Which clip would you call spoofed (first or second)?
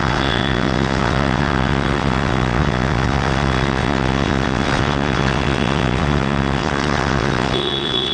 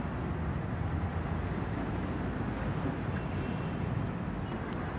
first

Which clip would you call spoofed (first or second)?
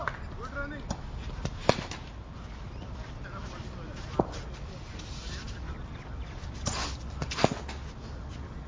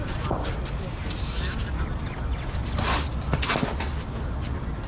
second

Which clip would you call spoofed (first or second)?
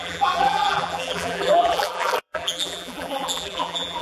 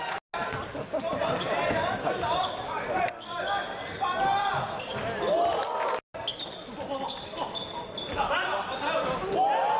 first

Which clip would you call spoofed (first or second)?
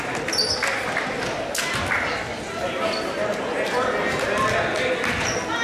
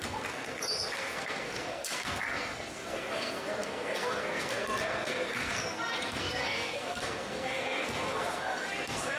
second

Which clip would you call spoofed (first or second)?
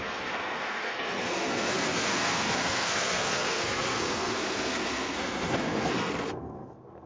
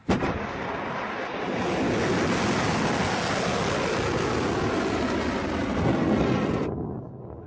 first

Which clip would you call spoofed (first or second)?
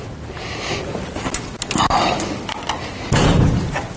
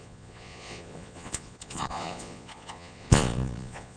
second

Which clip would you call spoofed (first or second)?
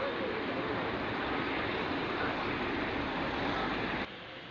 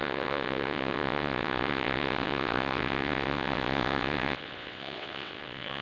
second